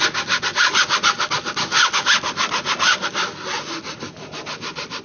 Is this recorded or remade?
recorded